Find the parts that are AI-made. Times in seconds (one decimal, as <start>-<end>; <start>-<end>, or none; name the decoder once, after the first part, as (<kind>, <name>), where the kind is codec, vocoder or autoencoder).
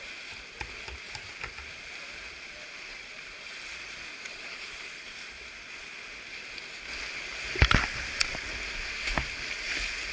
1.2-2.2 (vocoder, BigVGAN v2); 2.9-5.5